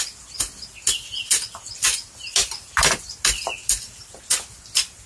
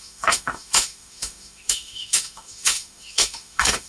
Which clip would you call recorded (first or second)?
first